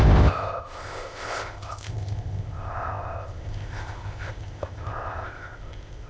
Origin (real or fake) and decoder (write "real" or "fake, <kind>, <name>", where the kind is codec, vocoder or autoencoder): fake, codec, ZipCodec